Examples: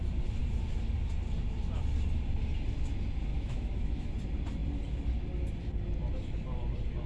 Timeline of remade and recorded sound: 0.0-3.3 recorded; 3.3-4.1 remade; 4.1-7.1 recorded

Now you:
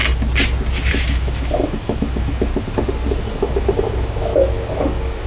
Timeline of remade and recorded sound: 0.0-0.9 recorded; 0.9-2.5 remade; 2.5-3.1 recorded; 3.1-5.3 remade